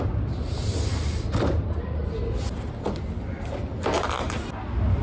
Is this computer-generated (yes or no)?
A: no